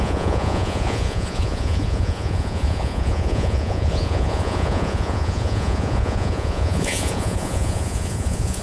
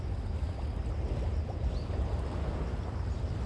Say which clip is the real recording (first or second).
second